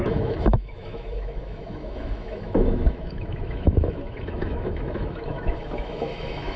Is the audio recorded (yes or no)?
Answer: no